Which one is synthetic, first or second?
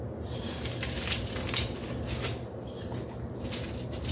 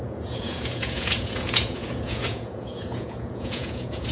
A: second